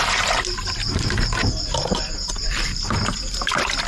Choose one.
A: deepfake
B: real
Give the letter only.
B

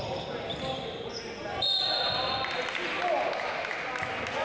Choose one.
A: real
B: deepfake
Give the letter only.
A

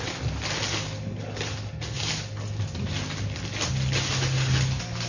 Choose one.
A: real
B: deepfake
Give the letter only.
A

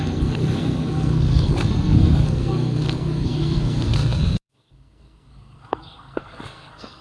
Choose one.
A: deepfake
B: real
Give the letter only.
A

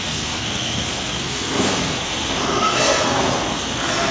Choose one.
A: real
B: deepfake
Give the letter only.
B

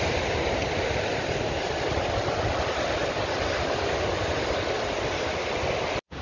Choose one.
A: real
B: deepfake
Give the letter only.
A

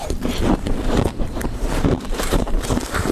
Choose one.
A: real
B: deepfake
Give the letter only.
B